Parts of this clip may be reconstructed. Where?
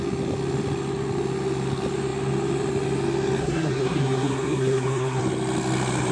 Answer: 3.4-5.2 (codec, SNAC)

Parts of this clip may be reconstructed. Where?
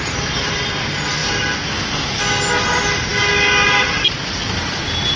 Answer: none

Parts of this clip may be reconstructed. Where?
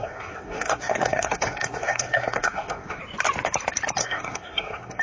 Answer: 0.0-3.0 (codec, SNAC); 4.0-5.0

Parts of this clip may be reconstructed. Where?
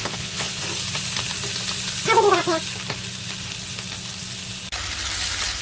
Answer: 0.0-0.6 (vocoder, Vocos)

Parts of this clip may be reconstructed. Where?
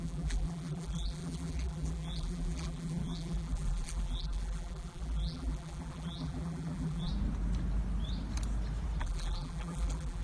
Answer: 0.0-7.1 (vocoder, BigVGAN v2); 9.0-10.2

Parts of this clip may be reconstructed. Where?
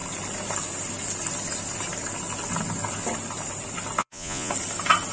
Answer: 4.0-4.5 (vocoder, Vocos)